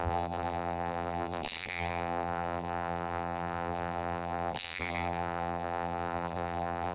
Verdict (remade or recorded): remade